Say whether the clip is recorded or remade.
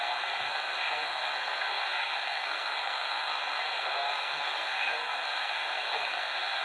remade